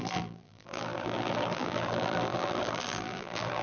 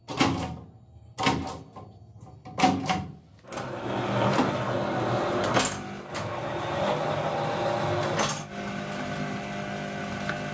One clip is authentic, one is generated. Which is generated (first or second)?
first